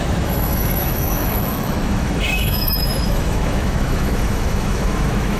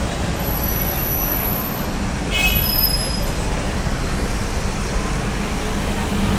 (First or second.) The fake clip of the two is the first